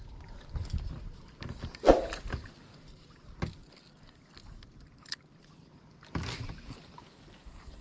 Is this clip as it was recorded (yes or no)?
yes